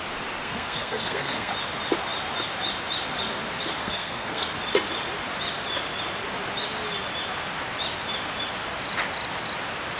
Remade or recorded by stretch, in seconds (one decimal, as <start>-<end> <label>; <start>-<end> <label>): 0.0-0.4 recorded; 0.4-1.5 remade; 1.5-3.8 recorded; 3.8-4.5 remade; 4.5-10.0 recorded